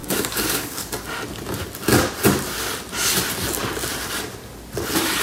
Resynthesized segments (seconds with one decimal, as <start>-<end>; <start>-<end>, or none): 0.0-0.9